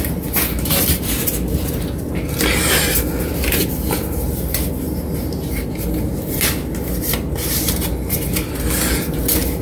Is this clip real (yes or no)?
yes